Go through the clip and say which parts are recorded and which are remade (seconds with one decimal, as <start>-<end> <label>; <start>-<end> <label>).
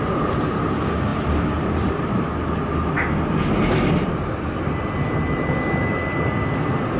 0.0-7.0 recorded